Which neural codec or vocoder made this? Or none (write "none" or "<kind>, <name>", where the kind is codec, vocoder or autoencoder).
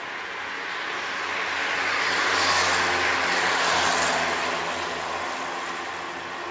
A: none